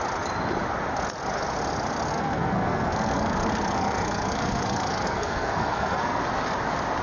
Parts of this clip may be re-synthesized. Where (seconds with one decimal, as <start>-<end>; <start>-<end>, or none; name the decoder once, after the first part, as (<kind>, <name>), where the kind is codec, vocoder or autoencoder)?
2.1-6.2 (codec, SNAC)